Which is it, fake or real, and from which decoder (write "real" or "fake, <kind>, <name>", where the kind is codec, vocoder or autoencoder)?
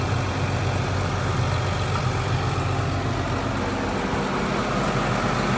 real